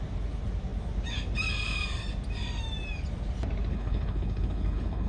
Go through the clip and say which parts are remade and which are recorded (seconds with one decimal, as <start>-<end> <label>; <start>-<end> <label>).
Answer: 0.0-3.7 recorded; 3.7-5.1 remade